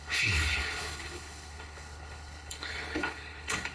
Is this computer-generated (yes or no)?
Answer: yes